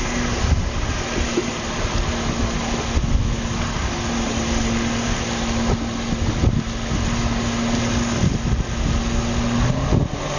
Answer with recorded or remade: recorded